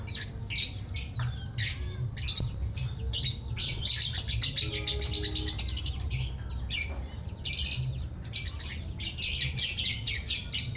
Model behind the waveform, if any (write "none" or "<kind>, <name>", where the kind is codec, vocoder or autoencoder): none